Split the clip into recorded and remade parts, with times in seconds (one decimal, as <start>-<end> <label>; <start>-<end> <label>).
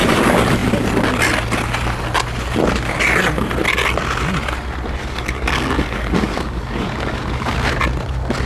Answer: 0.0-5.0 recorded; 5.0-7.5 remade; 7.5-8.5 recorded